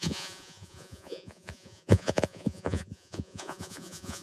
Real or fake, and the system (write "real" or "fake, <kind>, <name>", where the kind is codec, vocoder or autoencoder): fake, vocoder, Vocos